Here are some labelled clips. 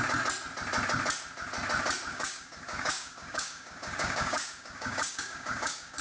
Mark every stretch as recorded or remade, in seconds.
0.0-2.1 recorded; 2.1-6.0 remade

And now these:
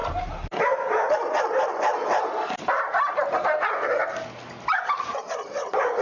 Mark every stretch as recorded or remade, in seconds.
0.0-6.0 recorded

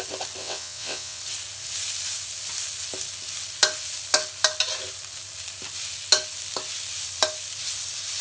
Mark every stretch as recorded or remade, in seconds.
0.0-0.4 recorded; 0.4-1.2 remade; 1.2-8.2 recorded